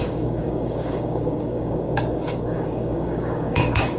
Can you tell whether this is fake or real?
fake